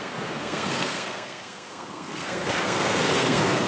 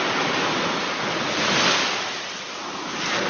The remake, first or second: first